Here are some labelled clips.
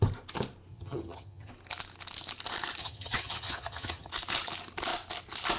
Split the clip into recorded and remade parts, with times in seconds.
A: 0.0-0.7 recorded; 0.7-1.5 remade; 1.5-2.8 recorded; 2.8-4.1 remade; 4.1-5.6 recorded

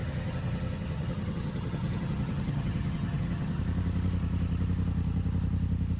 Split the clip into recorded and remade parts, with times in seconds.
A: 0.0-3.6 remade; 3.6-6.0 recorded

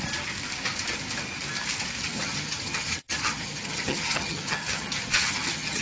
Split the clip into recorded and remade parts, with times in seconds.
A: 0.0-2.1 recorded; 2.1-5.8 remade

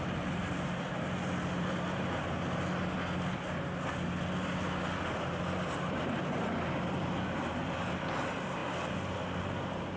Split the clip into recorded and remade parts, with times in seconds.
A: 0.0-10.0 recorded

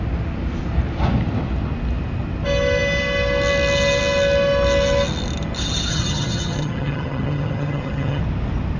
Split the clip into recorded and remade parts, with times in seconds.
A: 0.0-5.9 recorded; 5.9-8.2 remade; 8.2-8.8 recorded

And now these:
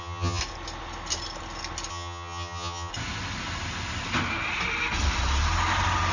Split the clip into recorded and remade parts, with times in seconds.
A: 0.0-0.4 remade; 0.4-1.9 recorded; 1.9-2.9 remade; 2.9-6.1 recorded